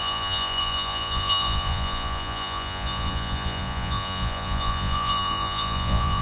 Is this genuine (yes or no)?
no